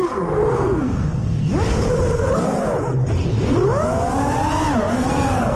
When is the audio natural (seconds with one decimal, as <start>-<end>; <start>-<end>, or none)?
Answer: 1.5-4.9